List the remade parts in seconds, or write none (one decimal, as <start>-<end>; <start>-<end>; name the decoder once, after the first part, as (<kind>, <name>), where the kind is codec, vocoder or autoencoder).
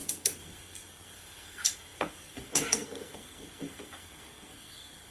0.0-5.1 (codec, SNAC)